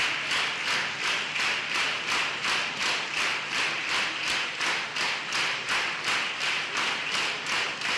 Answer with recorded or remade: recorded